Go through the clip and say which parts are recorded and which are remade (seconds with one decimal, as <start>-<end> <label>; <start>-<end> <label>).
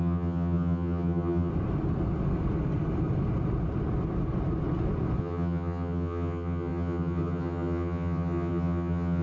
0.0-1.5 remade; 1.5-5.2 recorded; 5.2-9.2 remade